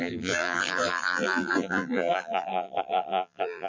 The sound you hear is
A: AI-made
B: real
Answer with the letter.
A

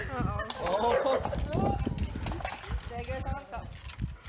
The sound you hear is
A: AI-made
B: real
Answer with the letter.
B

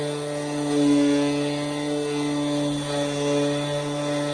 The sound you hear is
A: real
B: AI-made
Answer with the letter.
A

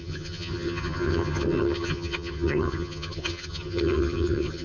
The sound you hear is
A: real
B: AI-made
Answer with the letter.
B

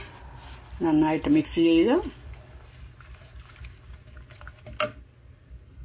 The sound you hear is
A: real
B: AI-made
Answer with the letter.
A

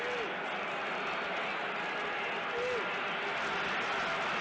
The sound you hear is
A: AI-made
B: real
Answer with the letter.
B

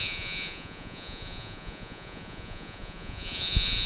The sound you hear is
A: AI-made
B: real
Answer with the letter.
A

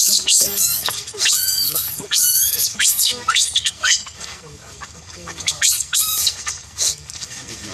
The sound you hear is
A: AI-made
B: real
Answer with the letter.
A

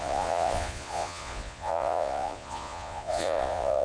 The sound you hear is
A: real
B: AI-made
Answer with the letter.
B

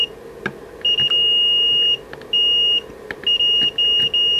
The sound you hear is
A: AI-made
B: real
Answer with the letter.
B